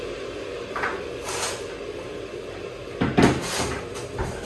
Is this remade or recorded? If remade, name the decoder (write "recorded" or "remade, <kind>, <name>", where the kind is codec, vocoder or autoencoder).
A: recorded